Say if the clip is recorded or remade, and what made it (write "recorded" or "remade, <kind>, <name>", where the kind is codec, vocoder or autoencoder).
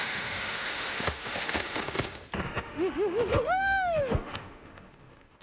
remade, autoencoder, DAC-VAE